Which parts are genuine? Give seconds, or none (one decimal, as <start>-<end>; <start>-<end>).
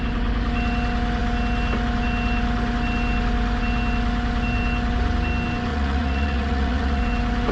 0.0-5.7; 7.0-7.5